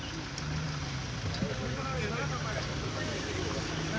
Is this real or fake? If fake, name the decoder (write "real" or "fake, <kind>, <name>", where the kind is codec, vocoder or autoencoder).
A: real